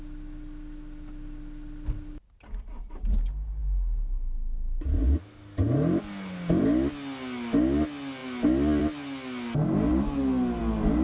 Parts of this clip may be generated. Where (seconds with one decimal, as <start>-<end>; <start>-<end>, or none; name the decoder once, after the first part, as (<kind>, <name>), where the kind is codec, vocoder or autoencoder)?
none

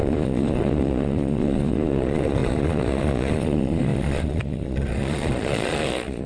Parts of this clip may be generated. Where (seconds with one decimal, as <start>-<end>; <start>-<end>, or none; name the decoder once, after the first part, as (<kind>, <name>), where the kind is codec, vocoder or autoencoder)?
0.0-6.3 (vocoder, Vocos)

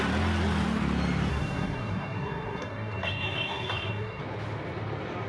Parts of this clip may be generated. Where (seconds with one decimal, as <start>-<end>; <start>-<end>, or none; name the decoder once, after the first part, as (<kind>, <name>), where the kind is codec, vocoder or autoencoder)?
1.3-4.2 (codec, SNAC)

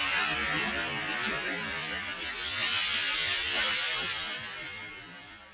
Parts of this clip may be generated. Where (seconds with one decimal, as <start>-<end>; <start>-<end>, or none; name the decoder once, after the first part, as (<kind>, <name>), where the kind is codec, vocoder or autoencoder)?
0.0-5.5 (vocoder, BigVGAN v2)

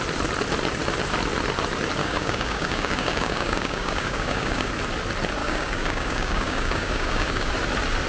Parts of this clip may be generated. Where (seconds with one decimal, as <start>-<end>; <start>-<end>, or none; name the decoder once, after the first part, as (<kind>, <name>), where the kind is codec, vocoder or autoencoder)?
2.0-4.7 (codec, DAC); 5.4-7.5